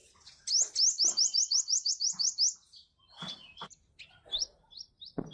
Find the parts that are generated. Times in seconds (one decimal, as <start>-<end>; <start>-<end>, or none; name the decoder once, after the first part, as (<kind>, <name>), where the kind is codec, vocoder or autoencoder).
none